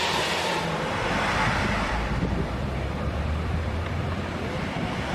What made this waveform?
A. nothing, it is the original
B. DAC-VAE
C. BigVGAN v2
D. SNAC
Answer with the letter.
C